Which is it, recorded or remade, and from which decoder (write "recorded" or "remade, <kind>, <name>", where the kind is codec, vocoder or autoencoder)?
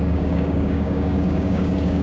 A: remade, codec, DAC